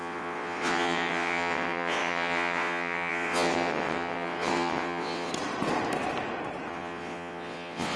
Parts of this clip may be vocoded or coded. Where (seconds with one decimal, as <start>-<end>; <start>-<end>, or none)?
0.0-5.3; 6.7-8.0